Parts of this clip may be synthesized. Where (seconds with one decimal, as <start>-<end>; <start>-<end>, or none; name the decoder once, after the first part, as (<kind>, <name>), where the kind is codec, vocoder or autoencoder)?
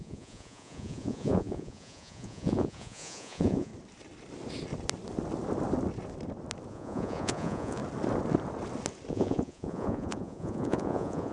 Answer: 0.0-3.7 (vocoder, Vocos); 6.7-7.8; 9.1-11.3